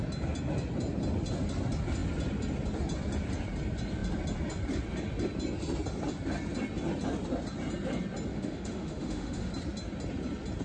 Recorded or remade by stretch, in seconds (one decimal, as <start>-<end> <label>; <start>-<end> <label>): 0.0-8.3 recorded; 8.3-9.5 remade; 9.5-10.6 recorded